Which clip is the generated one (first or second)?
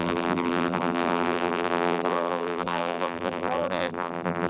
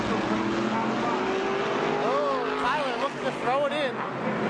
first